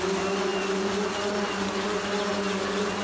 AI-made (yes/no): no